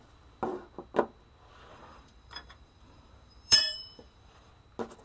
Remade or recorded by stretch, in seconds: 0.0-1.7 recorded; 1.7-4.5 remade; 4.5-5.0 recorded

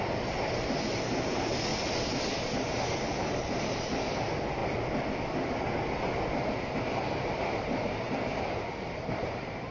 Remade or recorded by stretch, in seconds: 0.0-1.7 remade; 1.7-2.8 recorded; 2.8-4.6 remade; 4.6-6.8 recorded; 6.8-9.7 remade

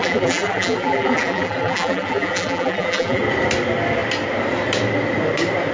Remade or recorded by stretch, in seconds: 0.0-3.2 remade; 3.2-5.7 recorded

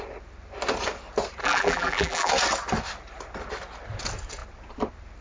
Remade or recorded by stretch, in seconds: 0.0-1.4 recorded; 1.4-2.3 remade; 2.3-5.2 recorded